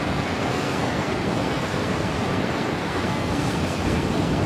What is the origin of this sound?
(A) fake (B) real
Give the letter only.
A